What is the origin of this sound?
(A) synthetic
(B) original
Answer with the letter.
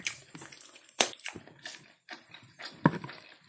A